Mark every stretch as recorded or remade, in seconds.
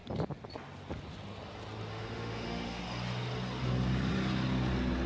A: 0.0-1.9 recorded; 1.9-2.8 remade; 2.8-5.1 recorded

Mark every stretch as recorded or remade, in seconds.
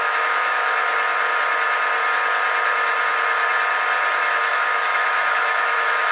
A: 0.0-0.8 remade; 0.8-4.5 recorded; 4.5-6.1 remade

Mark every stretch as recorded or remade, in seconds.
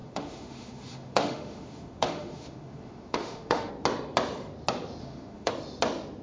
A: 0.0-3.7 remade; 3.7-5.0 recorded; 5.0-5.5 remade; 5.5-6.2 recorded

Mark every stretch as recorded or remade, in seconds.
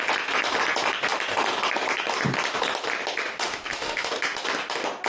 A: 0.0-3.5 recorded; 3.5-4.1 remade; 4.1-5.1 recorded